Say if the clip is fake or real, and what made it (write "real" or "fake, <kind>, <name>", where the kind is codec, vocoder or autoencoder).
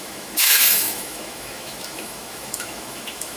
fake, autoencoder, DAC-VAE